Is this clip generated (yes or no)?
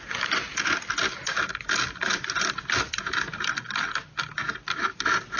no